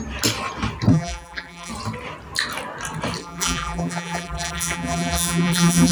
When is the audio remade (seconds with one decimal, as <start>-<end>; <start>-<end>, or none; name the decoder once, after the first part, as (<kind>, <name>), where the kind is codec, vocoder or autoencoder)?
0.9-1.7 (vocoder, BigVGAN v2); 3.2-5.9